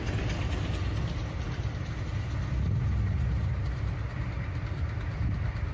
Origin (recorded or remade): recorded